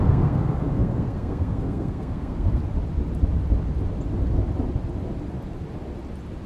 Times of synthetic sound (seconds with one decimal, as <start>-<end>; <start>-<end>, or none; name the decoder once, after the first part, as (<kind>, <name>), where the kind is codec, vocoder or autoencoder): 0.0-2.6 (codec, SNAC)